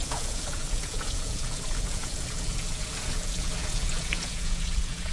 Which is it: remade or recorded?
remade